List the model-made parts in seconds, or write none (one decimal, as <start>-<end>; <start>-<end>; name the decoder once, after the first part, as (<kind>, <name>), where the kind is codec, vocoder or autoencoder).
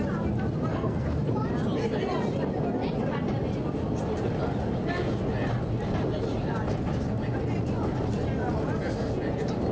0.7-1.3 (codec, SNAC)